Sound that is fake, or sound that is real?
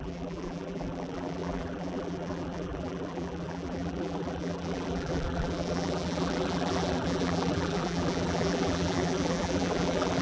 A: fake